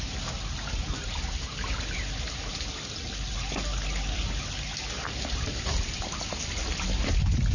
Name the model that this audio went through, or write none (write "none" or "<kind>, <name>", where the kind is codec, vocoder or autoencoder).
none